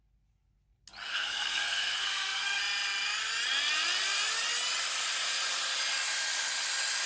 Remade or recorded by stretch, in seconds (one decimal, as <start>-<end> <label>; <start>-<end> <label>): 0.0-1.1 recorded; 1.1-2.6 remade; 2.6-7.1 recorded